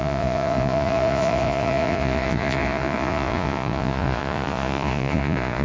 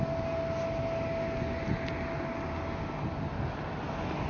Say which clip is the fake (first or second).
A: first